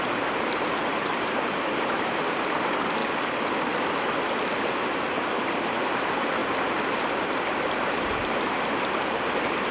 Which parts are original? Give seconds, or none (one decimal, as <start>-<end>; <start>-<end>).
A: 3.0-4.5; 6.4-8.0